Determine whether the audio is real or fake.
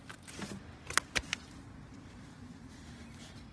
real